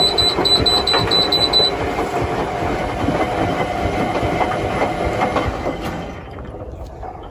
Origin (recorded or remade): recorded